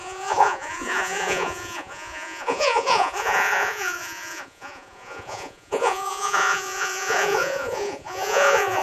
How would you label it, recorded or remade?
remade